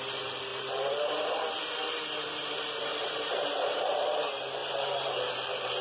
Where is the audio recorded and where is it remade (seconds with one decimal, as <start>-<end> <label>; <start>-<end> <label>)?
0.0-0.5 recorded; 0.5-1.6 remade; 1.6-2.9 recorded; 2.9-4.0 remade; 4.0-5.8 recorded